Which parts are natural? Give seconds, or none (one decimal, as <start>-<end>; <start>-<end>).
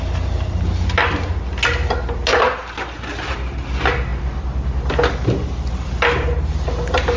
0.0-7.2